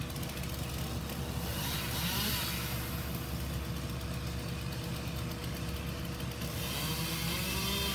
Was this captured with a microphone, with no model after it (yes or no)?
yes